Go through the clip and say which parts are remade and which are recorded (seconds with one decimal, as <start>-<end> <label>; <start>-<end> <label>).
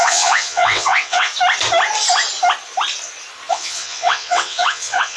0.0-1.3 remade; 1.3-3.5 recorded; 3.5-5.2 remade